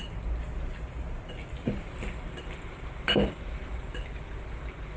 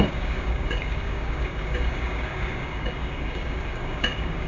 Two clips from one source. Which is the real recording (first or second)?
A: first